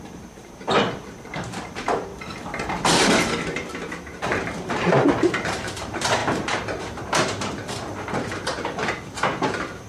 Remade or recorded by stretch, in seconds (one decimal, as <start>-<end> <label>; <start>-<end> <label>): 0.0-2.1 remade; 2.1-2.8 recorded; 2.8-9.9 remade